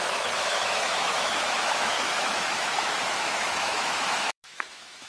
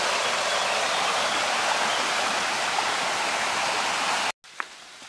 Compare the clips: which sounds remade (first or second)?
first